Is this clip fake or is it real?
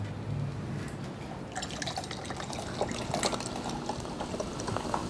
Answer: real